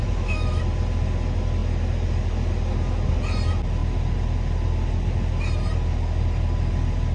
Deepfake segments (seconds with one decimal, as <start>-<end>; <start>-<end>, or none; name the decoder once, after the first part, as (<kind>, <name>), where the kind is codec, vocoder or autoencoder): 0.0-0.6 (autoencoder, DAC-VAE)